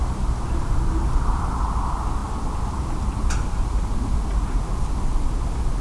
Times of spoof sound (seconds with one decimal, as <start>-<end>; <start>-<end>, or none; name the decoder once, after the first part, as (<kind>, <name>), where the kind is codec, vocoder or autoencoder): none